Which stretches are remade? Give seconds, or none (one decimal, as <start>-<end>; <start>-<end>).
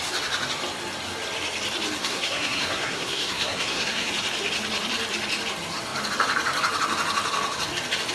2.0-4.1